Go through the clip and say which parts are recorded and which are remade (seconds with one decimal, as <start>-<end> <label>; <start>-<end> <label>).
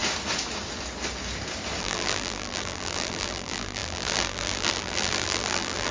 0.0-1.8 recorded; 1.8-5.9 remade